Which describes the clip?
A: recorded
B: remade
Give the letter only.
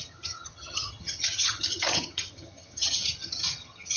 B